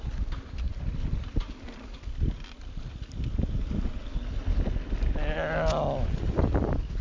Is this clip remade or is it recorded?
recorded